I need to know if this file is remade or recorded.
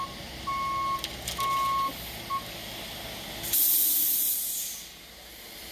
recorded